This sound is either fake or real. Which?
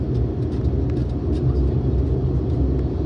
real